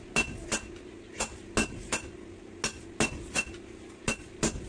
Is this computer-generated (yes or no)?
no